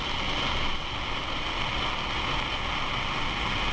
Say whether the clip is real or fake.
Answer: real